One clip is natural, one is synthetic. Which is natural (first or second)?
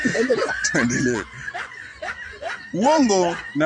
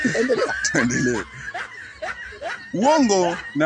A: second